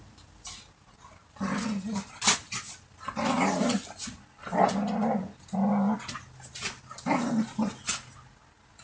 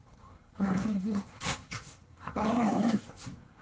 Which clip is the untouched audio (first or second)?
first